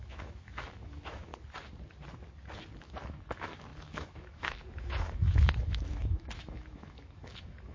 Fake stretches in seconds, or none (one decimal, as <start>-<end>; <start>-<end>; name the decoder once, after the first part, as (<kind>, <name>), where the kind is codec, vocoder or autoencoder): 0.0-1.3 (autoencoder, DAC-VAE); 2.8-7.7